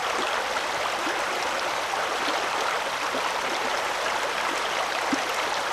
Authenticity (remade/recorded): recorded